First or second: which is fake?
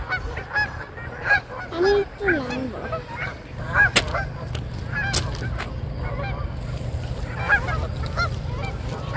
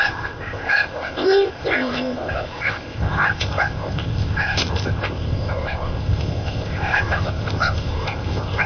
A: second